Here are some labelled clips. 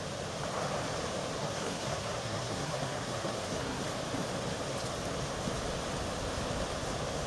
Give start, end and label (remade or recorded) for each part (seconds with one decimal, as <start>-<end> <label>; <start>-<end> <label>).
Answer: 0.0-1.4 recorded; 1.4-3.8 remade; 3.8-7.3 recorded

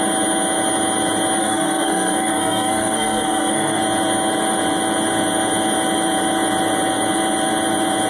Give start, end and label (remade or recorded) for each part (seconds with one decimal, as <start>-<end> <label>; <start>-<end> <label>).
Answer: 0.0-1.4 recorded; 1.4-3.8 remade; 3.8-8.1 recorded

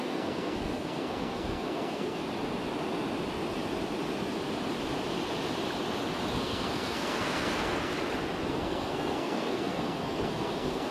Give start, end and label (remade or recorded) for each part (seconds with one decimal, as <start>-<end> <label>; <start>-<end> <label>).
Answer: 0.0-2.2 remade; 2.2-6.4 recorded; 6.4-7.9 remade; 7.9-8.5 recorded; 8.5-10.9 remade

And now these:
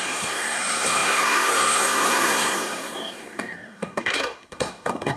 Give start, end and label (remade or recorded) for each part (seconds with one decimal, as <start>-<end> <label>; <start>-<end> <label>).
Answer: 0.0-5.2 remade